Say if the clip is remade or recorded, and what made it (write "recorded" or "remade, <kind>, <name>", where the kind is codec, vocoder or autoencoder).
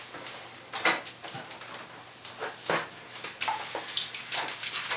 recorded